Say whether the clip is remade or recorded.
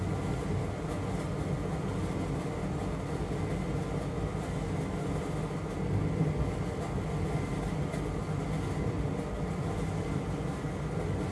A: recorded